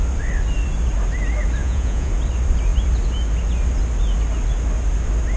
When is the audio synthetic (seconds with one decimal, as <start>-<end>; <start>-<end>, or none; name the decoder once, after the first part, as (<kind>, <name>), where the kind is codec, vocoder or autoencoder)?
1.6-2.1 (vocoder, Vocos)